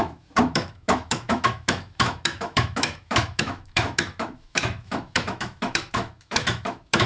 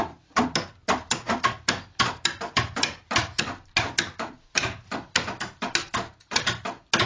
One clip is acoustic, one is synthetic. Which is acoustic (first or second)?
second